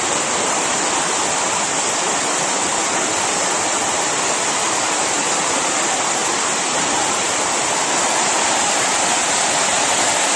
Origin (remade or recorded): recorded